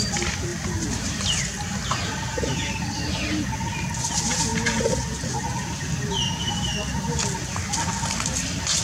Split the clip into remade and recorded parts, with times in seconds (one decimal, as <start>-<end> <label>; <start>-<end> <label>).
0.0-0.5 recorded; 0.5-1.3 remade; 1.3-8.8 recorded